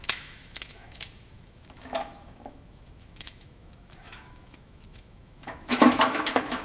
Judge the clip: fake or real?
fake